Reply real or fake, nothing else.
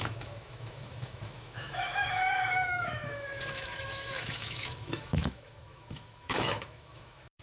fake